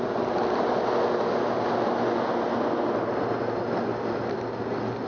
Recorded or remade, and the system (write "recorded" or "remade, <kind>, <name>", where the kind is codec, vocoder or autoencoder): recorded